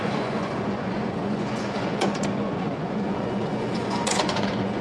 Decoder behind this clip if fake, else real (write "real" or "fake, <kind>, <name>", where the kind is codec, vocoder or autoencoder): fake, vocoder, Vocos